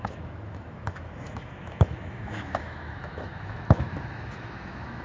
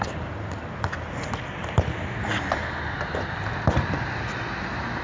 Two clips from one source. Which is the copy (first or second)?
first